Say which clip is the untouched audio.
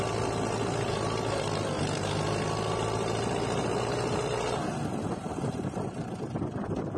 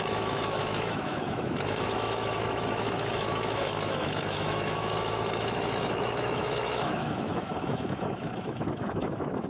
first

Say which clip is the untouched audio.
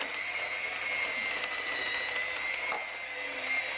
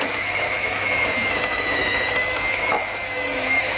first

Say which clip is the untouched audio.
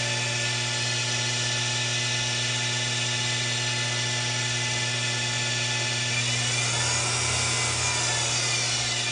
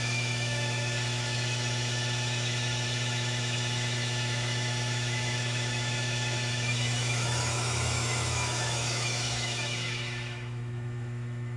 first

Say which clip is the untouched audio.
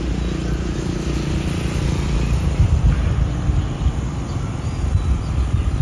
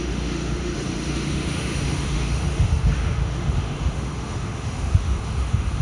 first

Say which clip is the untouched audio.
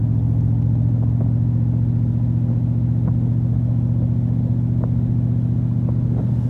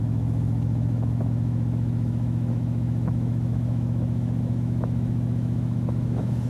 first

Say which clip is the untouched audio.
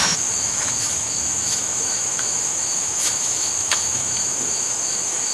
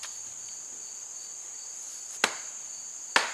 second